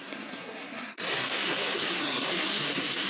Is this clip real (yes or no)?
no